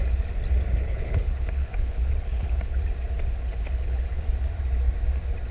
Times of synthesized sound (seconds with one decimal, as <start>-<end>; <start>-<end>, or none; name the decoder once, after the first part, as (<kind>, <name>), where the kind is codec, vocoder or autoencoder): 0.8-2.8 (codec, HILCodec); 3.5-4.2